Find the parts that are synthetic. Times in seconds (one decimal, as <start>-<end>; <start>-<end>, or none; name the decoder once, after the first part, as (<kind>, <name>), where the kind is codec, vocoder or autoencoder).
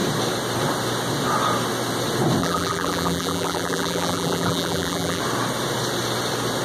2.4-5.2 (vocoder, BigVGAN v2)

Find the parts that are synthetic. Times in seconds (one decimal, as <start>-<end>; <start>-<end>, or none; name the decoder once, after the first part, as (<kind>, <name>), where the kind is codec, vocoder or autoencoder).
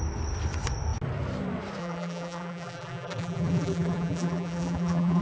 1.8-5.2 (vocoder, BigVGAN v2)